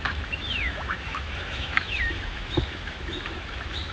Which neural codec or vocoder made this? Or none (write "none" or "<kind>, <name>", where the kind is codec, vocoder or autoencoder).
autoencoder, DAC-VAE